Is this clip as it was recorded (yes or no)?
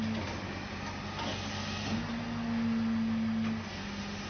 yes